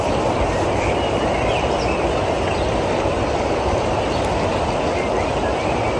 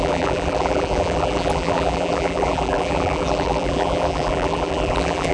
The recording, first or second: first